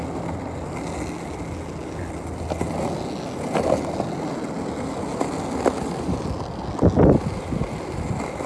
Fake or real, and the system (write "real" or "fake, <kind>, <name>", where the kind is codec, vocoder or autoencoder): real